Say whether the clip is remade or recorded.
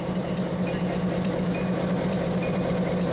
remade